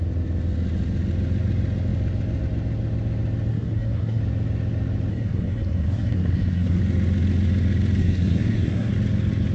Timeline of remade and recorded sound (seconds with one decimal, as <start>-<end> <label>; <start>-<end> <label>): 0.0-3.5 recorded; 3.5-4.2 remade; 4.2-5.1 recorded; 5.1-6.8 remade; 6.8-8.0 recorded; 8.0-8.9 remade; 8.9-9.5 recorded